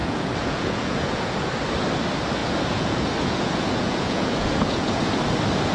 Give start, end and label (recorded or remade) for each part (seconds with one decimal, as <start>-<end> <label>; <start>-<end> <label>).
0.0-1.5 remade; 1.5-2.4 recorded; 2.4-5.2 remade; 5.2-5.7 recorded